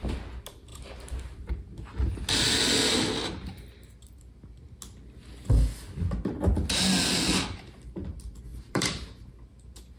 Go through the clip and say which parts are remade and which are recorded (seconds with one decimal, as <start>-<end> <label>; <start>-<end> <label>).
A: 0.0-0.7 recorded; 0.7-1.5 remade; 1.5-8.5 recorded; 8.5-9.3 remade; 9.3-10.0 recorded